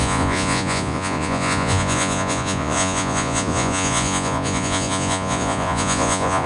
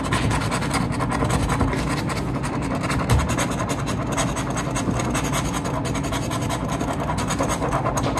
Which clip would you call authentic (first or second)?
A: second